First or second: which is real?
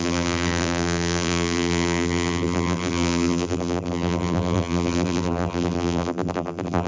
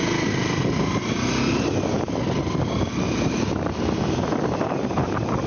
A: second